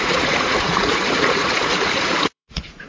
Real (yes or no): no